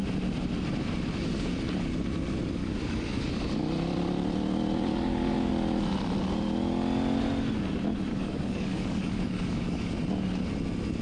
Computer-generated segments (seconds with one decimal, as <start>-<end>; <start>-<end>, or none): 2.6-3.3; 4.9-5.5; 8.1-9.9